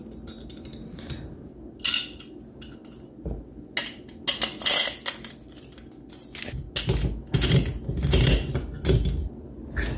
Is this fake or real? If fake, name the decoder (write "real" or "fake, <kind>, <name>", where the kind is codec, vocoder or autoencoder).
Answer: real